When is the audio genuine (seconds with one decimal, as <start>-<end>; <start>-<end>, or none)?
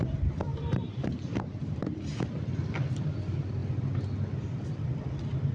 0.0-0.5; 2.0-5.5